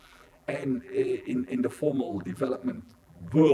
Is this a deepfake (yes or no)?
yes